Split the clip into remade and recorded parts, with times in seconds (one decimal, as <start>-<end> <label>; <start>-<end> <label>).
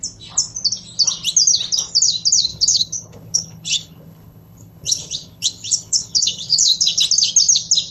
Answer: 0.0-2.5 recorded; 2.5-7.0 remade; 7.0-7.9 recorded